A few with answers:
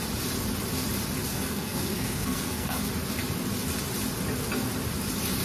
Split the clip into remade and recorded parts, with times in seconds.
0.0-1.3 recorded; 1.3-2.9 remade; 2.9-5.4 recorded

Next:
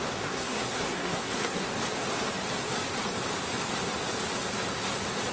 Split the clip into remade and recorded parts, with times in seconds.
0.0-1.7 remade; 1.7-5.3 recorded

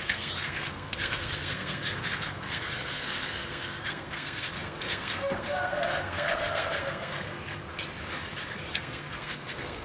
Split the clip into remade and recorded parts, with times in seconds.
0.0-7.7 remade; 7.7-8.7 recorded; 8.7-9.8 remade

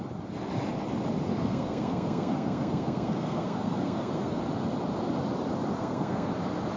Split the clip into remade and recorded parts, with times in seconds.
0.0-1.3 recorded; 1.3-4.4 remade; 4.4-5.8 recorded; 5.8-6.3 remade; 6.3-6.8 recorded

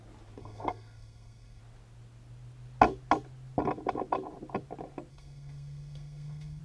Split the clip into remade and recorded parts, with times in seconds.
0.0-0.4 recorded; 0.4-1.6 remade; 1.6-5.1 recorded; 5.1-6.6 remade

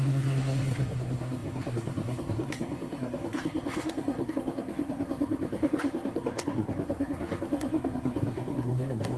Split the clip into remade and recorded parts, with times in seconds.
0.0-9.2 remade

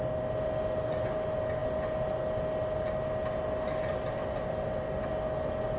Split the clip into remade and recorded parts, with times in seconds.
0.0-5.8 recorded